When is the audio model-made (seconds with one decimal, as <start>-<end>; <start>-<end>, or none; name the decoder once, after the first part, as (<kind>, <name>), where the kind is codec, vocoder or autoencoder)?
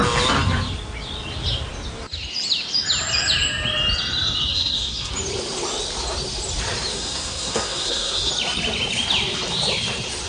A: 4.5-5.1 (codec, SNAC); 6.9-8.3